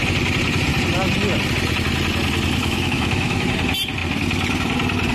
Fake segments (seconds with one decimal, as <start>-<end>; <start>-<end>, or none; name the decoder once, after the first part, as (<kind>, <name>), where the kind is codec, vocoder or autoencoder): 2.6-3.5 (autoencoder, DAC-VAE)